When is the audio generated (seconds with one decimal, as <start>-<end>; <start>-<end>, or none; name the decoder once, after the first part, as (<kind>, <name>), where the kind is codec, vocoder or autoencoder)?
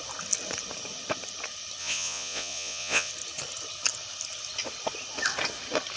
1.8-3.1 (vocoder, Vocos)